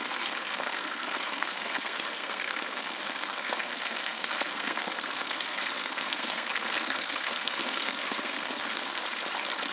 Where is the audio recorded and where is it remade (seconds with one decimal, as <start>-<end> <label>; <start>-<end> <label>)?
0.0-9.0 remade; 9.0-9.7 recorded